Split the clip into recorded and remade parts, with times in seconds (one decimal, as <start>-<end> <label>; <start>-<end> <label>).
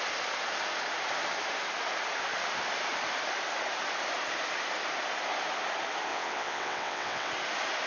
0.0-6.1 recorded; 6.1-7.3 remade; 7.3-7.9 recorded